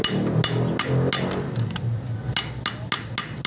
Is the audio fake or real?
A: real